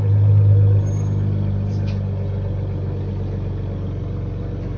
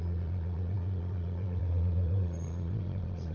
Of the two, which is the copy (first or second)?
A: second